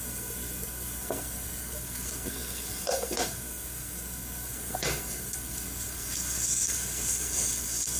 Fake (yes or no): yes